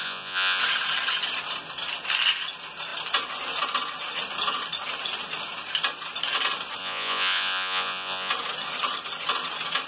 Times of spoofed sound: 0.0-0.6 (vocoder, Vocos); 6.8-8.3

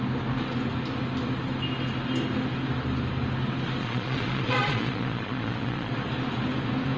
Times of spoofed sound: 3.8-5.9 (vocoder, Vocos)